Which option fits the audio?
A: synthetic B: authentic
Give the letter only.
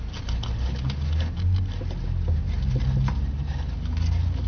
B